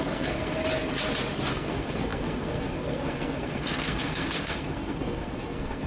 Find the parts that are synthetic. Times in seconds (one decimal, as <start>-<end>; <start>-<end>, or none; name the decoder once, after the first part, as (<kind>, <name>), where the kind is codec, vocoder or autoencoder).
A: 0.0-0.6 (codec, SNAC); 1.5-5.9